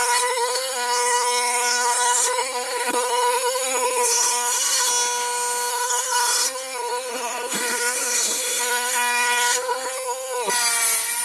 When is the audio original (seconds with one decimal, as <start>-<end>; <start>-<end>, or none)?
4.9-5.7; 10.5-11.2